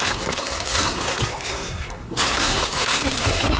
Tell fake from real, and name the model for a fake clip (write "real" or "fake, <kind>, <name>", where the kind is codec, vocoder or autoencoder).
fake, codec, SNAC